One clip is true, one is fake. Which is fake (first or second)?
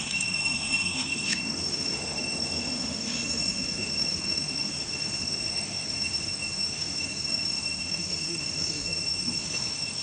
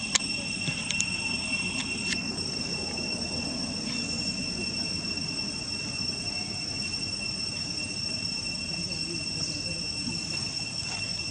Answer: first